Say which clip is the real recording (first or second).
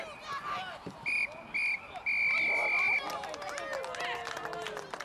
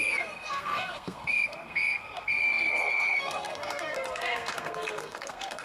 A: first